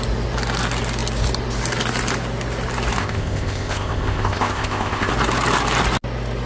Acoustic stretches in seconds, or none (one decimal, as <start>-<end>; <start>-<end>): 0.0-3.0; 5.1-6.5

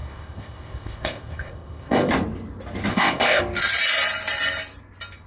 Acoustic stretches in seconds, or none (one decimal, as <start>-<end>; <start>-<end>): 2.1-2.9; 3.4-5.3

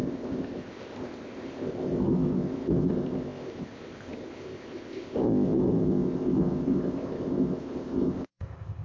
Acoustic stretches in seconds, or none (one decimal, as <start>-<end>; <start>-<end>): none